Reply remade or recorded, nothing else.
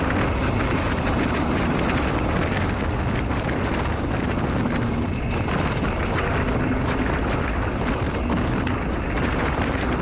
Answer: recorded